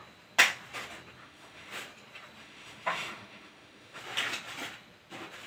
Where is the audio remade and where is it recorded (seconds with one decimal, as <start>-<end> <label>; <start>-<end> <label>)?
0.0-1.2 recorded; 1.2-1.7 remade; 1.7-2.4 recorded; 2.4-4.0 remade; 4.0-5.5 recorded